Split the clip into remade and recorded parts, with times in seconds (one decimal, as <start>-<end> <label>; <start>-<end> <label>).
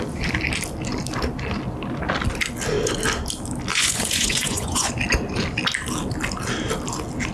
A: 0.0-3.7 recorded; 3.7-4.9 remade; 4.9-7.3 recorded